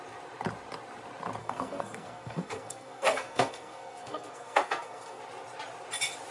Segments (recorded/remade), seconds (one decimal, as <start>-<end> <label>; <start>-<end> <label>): 0.0-1.4 recorded; 1.4-5.2 remade; 5.2-6.3 recorded